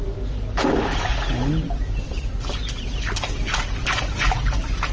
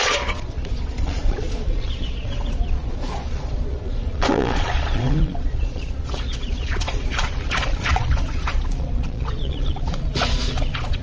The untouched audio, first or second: first